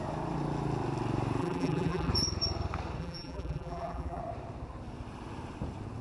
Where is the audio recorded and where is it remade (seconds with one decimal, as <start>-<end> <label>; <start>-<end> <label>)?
0.0-1.4 recorded; 1.4-2.1 remade; 2.1-3.0 recorded; 3.0-4.2 remade; 4.2-6.0 recorded